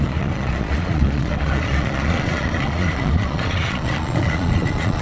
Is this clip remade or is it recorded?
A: remade